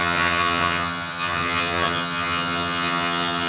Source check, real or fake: fake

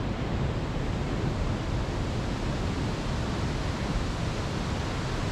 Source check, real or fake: real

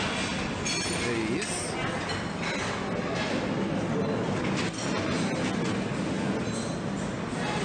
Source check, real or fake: real